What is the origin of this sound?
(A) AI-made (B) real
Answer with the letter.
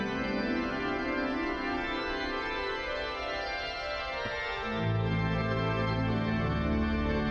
B